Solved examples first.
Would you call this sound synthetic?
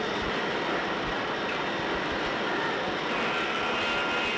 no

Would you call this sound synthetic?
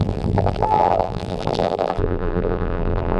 yes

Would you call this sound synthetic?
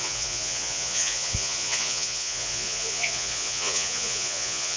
yes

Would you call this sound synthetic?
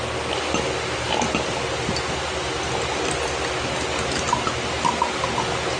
no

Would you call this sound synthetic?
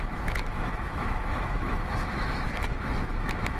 yes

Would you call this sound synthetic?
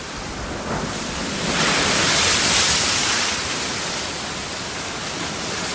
no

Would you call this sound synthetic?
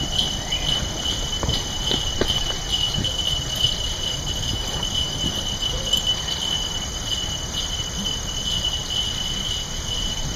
no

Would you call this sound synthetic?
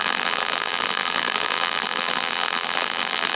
yes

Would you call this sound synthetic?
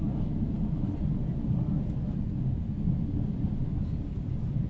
no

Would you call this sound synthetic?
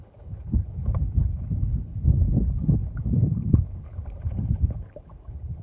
yes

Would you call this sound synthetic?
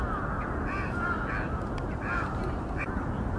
no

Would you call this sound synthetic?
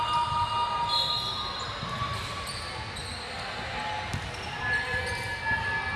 no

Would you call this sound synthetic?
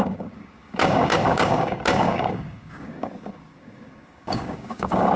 yes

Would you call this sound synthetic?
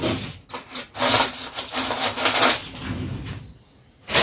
no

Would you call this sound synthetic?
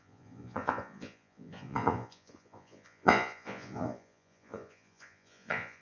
yes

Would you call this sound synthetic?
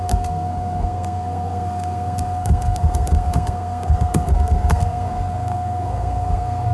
yes